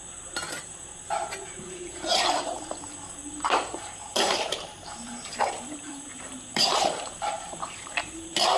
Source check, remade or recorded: remade